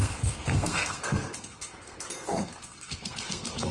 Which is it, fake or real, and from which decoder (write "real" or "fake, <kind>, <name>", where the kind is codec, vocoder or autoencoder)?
fake, codec, SNAC